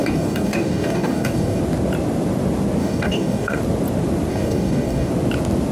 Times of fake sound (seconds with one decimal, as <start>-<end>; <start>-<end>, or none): 0.0-1.6; 2.8-3.6; 4.3-5.1